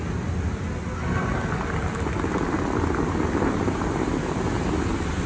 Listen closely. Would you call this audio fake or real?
real